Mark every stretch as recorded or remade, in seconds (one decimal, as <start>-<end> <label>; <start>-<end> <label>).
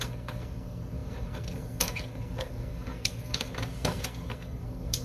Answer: 0.0-5.0 remade